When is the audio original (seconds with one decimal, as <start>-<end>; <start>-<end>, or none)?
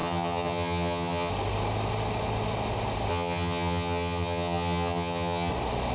1.3-3.1; 5.5-5.9